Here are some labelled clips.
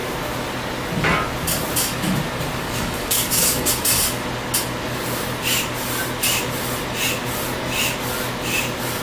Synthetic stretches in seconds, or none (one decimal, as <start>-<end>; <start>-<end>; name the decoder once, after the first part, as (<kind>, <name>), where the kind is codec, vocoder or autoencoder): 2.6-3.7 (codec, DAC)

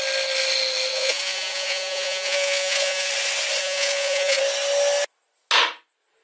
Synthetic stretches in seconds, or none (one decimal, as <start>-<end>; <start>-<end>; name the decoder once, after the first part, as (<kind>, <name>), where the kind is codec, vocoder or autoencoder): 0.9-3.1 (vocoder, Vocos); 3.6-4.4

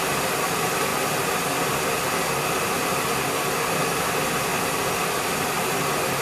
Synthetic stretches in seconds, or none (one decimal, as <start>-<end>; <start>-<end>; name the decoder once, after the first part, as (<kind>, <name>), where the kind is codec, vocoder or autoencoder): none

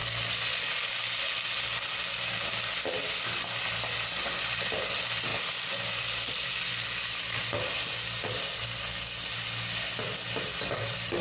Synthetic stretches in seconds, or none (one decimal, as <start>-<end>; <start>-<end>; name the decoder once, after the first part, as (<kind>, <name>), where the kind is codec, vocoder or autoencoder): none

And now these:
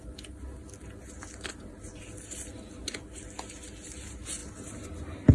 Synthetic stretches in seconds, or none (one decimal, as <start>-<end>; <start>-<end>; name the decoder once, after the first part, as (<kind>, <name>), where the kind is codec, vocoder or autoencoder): none

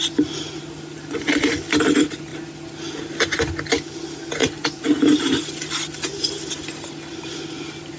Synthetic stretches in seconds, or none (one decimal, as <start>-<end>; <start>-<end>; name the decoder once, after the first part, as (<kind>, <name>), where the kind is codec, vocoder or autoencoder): 4.4-5.3 (vocoder, BigVGAN v2)